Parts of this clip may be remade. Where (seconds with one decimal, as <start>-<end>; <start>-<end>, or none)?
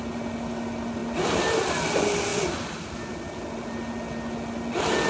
1.0-1.7; 2.3-3.5